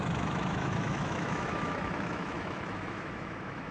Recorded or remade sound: remade